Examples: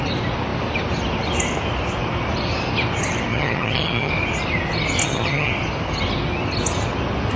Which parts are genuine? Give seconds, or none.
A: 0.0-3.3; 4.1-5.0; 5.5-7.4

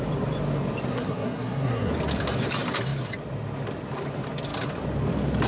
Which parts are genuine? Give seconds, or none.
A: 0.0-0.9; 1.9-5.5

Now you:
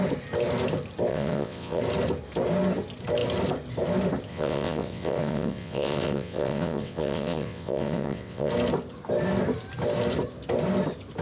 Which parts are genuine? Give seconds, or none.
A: 0.0-1.1; 1.8-4.3; 8.5-11.2

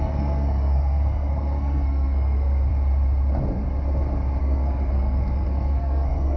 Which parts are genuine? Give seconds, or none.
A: 2.7-4.4